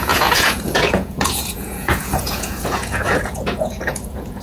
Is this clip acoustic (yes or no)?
no